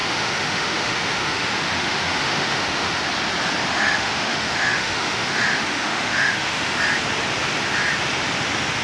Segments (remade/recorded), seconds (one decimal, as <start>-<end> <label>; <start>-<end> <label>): 0.0-3.0 remade; 3.0-3.6 recorded; 3.6-6.8 remade; 6.8-8.8 recorded